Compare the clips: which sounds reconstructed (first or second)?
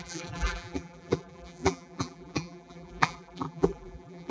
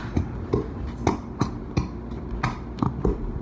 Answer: first